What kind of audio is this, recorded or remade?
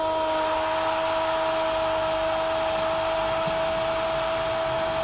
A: recorded